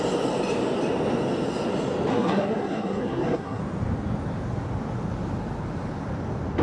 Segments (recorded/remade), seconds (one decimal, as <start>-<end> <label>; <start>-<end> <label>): 0.0-2.1 recorded; 2.1-3.6 remade; 3.6-6.6 recorded